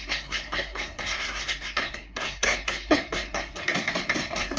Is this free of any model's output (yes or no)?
no